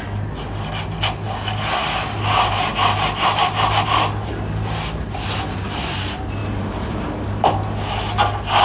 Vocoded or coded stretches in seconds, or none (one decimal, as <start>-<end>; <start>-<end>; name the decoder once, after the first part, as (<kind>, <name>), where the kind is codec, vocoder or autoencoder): 6.4-7.1 (vocoder, BigVGAN v2)

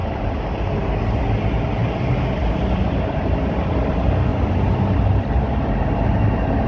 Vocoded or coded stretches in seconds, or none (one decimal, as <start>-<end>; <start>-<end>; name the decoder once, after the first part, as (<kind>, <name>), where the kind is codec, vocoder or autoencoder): 4.3-5.4 (vocoder, BigVGAN v2)

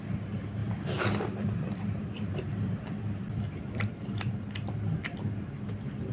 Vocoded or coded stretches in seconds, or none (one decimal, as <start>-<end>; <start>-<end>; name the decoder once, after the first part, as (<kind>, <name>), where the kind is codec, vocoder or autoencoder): 0.6-4.3 (vocoder, BigVGAN v2)

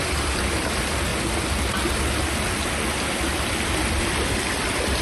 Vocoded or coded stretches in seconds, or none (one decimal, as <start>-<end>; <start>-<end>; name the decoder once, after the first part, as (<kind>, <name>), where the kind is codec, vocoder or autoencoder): 0.0-1.1 (vocoder, BigVGAN v2); 4.1-5.0

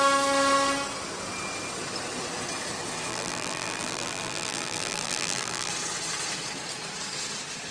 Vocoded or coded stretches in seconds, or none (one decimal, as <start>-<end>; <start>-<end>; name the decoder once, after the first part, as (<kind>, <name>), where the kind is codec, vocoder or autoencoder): 3.1-5.7 (vocoder, BigVGAN v2)

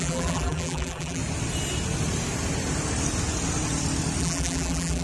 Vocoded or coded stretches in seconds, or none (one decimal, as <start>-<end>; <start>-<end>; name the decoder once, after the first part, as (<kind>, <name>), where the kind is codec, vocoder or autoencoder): 0.0-1.2 (vocoder, BigVGAN v2); 4.2-5.0